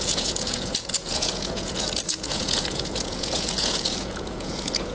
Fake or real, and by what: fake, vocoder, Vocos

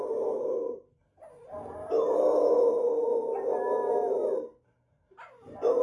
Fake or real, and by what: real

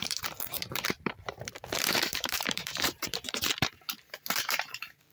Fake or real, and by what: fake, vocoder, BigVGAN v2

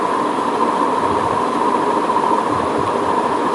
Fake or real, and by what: real